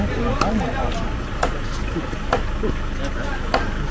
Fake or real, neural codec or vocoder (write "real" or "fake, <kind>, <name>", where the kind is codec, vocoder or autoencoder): real